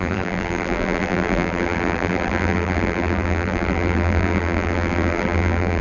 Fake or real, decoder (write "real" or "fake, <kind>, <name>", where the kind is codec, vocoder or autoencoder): fake, vocoder, BigVGAN v2